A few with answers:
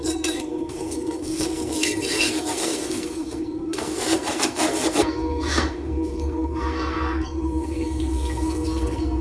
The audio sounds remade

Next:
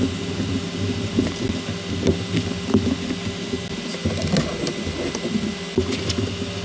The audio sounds recorded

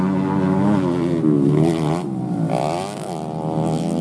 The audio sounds recorded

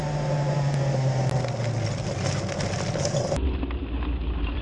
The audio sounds recorded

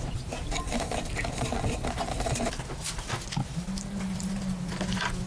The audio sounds recorded